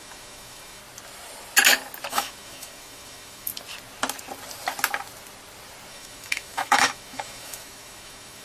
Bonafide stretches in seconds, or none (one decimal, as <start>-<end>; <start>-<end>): 0.8-2.1; 3.5-5.9